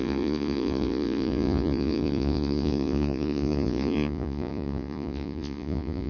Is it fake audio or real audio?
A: fake